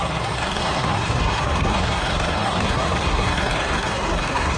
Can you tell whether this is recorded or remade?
remade